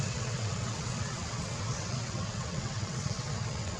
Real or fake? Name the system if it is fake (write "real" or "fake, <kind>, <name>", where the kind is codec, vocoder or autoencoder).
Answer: fake, vocoder, WaveNeXt